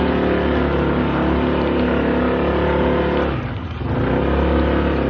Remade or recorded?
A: recorded